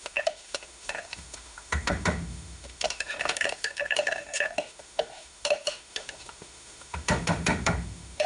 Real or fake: fake